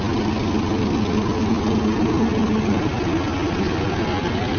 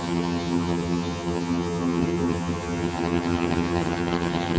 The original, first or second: first